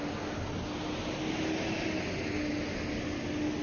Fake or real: real